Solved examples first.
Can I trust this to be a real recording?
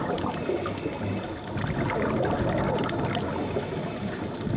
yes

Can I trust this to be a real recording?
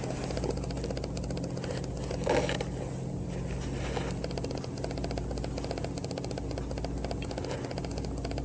yes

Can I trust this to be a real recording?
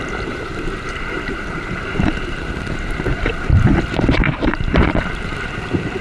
no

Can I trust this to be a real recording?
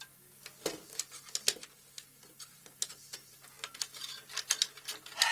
yes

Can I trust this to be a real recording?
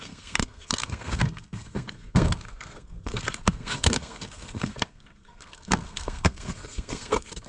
no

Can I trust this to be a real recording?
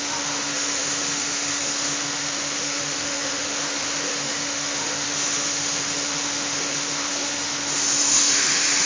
no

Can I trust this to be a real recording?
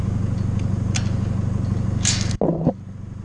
yes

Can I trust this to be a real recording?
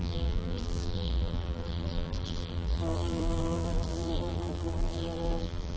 no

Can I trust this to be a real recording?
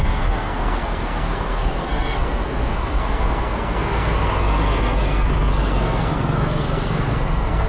no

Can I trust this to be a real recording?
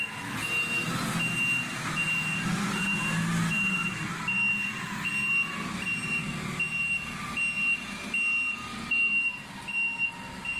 yes